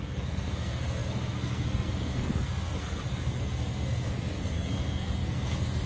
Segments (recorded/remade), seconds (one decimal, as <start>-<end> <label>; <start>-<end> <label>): 0.0-5.9 remade